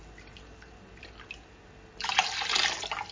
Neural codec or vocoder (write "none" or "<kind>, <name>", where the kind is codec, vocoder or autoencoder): none